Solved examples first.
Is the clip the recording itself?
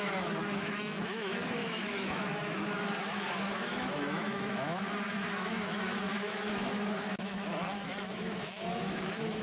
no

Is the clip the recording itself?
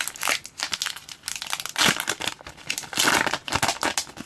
yes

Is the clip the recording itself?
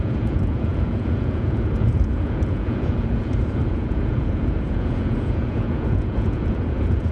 no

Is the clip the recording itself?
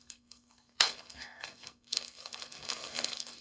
no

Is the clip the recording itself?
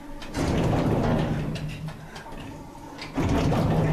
yes